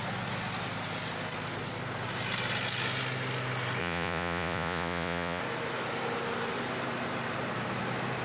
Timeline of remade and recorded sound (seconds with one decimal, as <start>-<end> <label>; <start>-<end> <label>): 0.0-3.8 recorded; 3.8-5.4 remade; 5.4-8.2 recorded

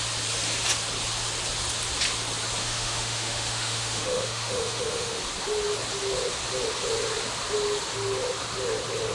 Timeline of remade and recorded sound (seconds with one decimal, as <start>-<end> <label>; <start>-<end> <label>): 0.0-2.6 recorded; 2.6-5.2 remade; 5.2-9.1 recorded

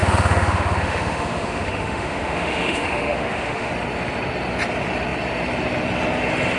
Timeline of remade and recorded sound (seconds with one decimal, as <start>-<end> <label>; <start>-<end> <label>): 0.0-3.7 remade; 3.7-6.6 recorded

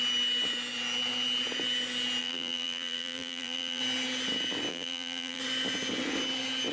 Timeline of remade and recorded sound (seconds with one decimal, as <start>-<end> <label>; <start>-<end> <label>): 0.0-2.2 recorded; 2.2-3.8 remade; 3.8-4.7 recorded; 4.7-5.4 remade; 5.4-6.7 recorded

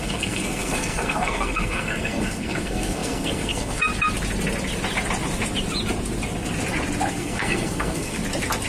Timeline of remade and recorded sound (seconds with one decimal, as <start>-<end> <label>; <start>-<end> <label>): 0.0-3.9 remade; 3.9-7.1 recorded; 7.1-8.2 remade; 8.2-8.7 recorded

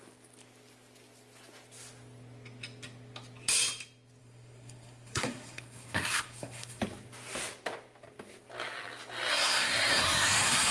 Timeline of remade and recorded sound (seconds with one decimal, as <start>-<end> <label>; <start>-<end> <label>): 0.0-4.2 recorded; 4.2-6.8 remade; 6.8-9.3 recorded; 9.3-10.7 remade

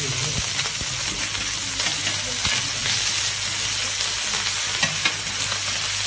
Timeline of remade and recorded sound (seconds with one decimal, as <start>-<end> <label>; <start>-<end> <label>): 0.0-6.1 recorded